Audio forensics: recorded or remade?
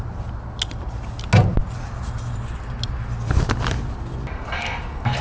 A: recorded